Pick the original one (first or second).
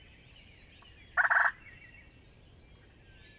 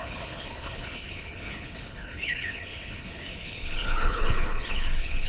first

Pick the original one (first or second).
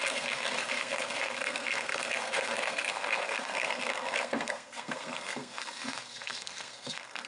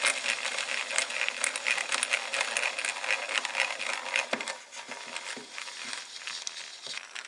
second